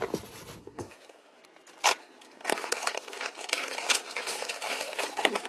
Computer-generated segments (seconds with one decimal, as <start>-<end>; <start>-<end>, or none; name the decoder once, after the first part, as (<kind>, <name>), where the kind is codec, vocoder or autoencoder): 0.6-1.4 (codec, SNAC); 2.0-5.5